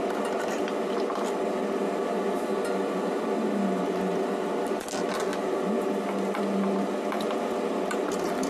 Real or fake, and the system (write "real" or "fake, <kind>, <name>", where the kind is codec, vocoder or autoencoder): real